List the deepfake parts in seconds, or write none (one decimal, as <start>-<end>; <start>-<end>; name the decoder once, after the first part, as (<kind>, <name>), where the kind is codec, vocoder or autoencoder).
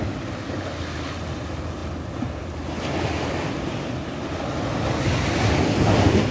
none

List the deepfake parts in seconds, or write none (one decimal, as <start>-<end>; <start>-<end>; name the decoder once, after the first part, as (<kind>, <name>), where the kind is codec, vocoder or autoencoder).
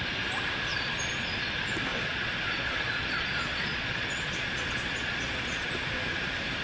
0.7-1.5 (vocoder, Vocos); 1.9-5.7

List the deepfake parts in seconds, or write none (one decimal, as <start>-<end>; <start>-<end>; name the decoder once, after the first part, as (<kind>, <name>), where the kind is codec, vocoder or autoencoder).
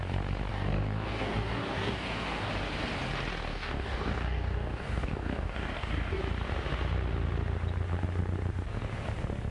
0.5-2.5 (codec, DAC); 3.5-6.2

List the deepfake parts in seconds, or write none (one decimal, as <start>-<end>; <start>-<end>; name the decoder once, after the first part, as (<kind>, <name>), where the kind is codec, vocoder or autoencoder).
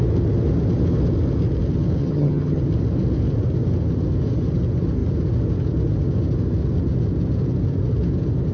2.0-2.6 (vocoder, HiFi-GAN)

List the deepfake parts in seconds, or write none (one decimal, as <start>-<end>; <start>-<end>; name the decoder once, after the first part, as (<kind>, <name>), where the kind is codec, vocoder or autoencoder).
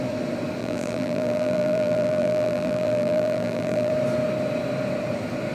0.6-3.9 (vocoder, BigVGAN v2)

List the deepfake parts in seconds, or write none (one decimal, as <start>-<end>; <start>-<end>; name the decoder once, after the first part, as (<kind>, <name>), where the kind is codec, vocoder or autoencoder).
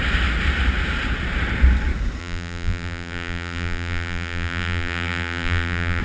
2.2-6.0 (vocoder, BigVGAN v2)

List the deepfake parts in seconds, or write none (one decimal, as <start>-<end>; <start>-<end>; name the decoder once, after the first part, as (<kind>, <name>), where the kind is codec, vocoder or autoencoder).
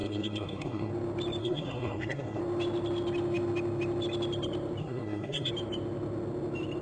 0.0-0.9 (codec, SNAC); 1.4-2.4; 4.8-5.5